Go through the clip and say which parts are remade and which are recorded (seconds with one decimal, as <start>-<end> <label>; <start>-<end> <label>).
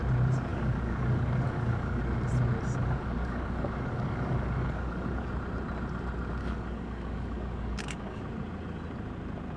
0.0-0.5 recorded; 0.5-2.0 remade; 2.0-2.8 recorded; 2.8-5.3 remade; 5.3-6.4 recorded; 6.4-8.2 remade; 8.2-9.6 recorded